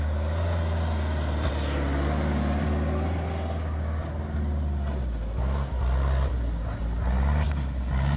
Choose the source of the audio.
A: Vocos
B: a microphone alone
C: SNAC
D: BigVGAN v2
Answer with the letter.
B